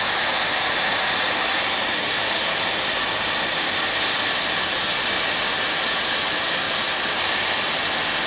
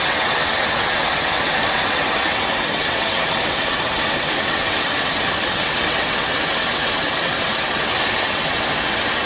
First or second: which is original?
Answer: first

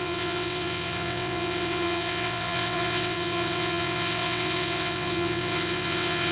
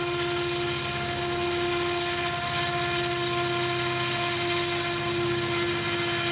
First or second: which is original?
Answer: second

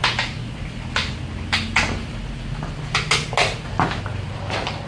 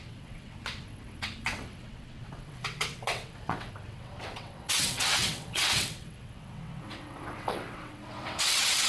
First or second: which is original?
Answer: first